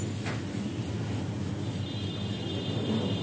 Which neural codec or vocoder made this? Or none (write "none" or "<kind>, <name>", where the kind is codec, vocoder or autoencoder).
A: none